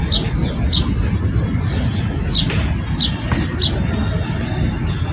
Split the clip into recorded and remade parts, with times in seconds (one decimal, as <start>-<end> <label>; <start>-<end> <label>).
0.0-5.1 recorded